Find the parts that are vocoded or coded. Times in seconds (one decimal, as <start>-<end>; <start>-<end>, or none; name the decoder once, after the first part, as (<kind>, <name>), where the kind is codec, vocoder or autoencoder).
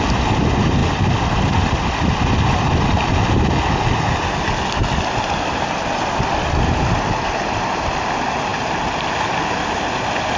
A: none